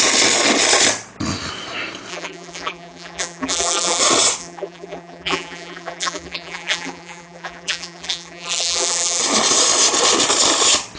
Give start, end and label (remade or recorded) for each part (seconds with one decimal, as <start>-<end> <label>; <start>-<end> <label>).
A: 0.0-2.1 recorded; 2.1-4.0 remade; 4.0-4.4 recorded; 4.4-9.2 remade; 9.2-11.0 recorded

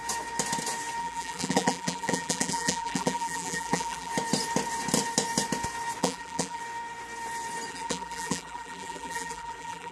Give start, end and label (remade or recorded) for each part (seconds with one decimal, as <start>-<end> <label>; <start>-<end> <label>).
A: 0.0-1.0 recorded; 1.0-4.1 remade; 4.1-6.0 recorded; 6.0-6.6 remade; 6.6-7.7 recorded; 7.7-9.9 remade

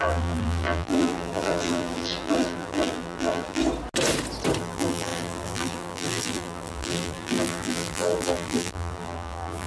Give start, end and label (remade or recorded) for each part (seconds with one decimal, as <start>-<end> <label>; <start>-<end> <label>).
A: 0.0-3.6 remade; 3.6-4.6 recorded; 4.6-9.7 remade

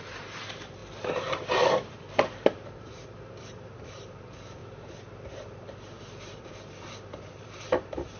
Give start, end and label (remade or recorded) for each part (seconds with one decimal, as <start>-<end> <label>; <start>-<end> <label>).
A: 0.0-4.6 remade; 4.6-6.4 recorded; 6.4-8.2 remade